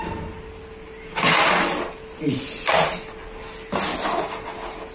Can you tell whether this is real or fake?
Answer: real